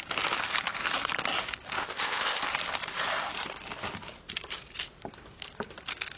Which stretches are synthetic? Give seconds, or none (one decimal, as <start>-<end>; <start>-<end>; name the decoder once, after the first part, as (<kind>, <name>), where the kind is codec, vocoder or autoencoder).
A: 1.8-2.4 (codec, ZipCodec)